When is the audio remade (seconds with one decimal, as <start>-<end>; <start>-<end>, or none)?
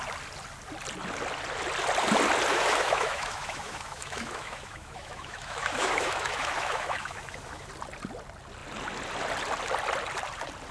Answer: 2.5-7.7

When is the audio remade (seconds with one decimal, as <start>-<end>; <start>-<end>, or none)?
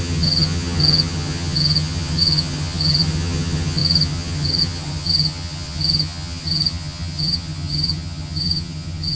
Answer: 0.0-9.1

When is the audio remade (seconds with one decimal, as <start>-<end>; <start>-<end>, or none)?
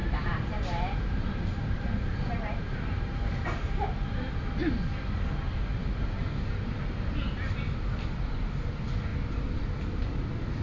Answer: 0.0-4.3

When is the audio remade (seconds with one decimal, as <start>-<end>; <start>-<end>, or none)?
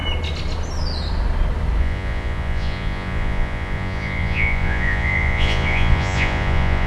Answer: 1.8-6.9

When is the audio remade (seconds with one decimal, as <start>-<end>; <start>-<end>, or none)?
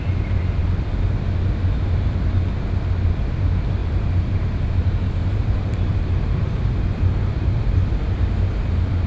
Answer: 3.8-4.6; 5.2-6.5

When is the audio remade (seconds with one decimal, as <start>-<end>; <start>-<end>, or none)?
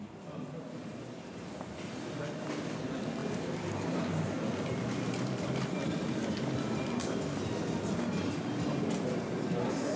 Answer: 0.8-2.2; 3.2-6.3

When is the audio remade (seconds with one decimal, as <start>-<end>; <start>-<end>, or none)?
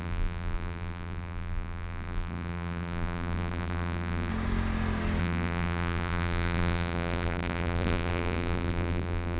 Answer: 0.0-4.3; 5.2-9.4